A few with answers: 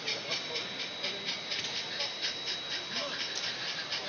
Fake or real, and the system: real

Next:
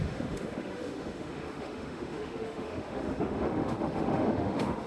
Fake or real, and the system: fake, autoencoder, DAC-VAE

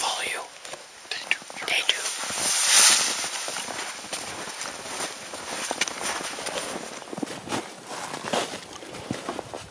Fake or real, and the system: real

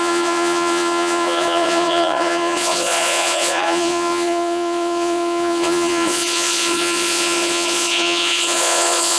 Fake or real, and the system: fake, vocoder, Vocos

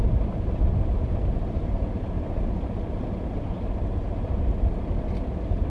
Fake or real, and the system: fake, vocoder, BigVGAN v2